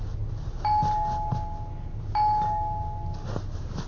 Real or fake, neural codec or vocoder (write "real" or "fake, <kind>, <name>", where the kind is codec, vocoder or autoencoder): real